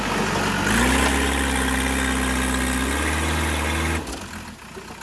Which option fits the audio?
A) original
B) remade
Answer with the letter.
A